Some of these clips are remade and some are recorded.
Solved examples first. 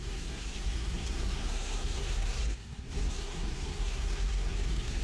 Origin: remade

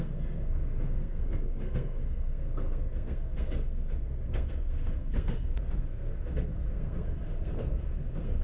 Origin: remade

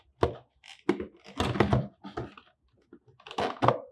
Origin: recorded